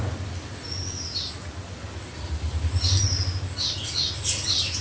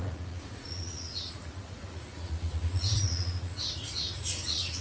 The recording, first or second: first